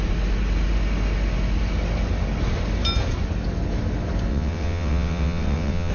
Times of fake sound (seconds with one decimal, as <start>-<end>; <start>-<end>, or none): 4.3-5.9